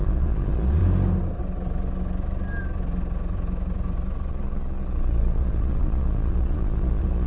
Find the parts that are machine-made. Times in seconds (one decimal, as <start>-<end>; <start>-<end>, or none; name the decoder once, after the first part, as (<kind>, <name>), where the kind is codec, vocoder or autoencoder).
0.0-0.8 (vocoder, Vocos); 4.3-7.3